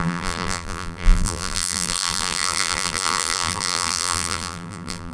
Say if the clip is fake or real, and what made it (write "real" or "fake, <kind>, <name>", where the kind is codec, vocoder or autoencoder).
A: fake, vocoder, BigVGAN v2